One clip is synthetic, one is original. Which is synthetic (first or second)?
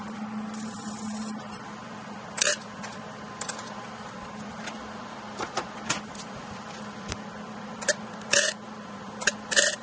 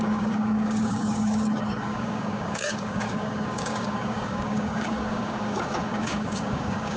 second